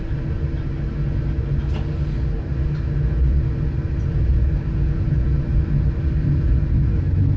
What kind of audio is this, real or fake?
real